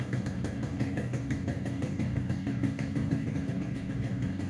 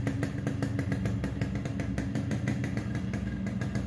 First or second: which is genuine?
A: second